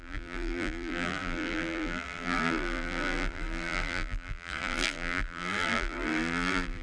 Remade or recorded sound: remade